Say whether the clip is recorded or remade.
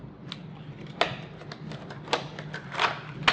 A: recorded